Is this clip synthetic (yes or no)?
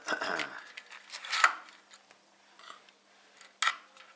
no